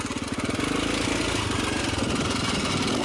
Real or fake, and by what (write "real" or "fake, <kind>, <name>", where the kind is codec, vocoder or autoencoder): real